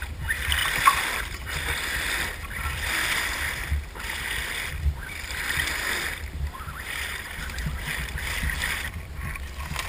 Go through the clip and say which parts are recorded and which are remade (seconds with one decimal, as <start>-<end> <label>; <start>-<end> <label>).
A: 0.0-3.6 remade; 3.6-4.7 recorded; 4.7-9.9 remade